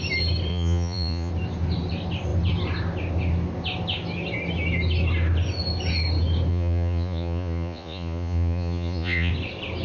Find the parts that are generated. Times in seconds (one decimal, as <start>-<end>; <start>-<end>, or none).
0.5-1.3; 6.5-9.3